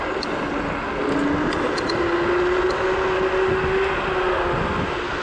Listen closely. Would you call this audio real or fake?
real